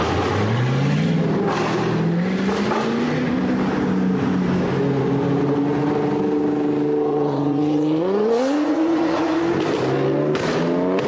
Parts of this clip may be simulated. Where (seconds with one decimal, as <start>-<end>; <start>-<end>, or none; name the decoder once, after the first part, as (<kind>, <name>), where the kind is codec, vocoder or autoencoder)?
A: 7.1-9.4 (vocoder, Vocos)